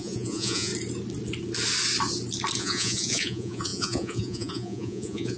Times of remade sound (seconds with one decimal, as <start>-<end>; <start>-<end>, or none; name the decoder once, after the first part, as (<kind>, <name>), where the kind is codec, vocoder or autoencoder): 0.0-0.7 (vocoder, Vocos); 2.6-5.4